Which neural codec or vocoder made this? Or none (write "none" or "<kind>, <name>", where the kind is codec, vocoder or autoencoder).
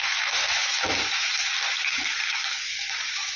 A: autoencoder, DAC-VAE